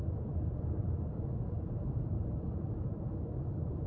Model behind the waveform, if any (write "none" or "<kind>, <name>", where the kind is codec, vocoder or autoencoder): vocoder, BigVGAN v2